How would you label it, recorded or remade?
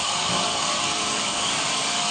remade